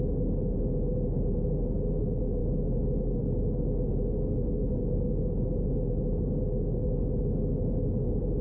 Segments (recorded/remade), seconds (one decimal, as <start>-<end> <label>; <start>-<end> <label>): 0.0-8.4 recorded